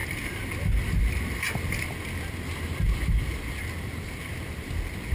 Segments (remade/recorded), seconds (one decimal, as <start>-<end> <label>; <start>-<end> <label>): 0.0-5.1 recorded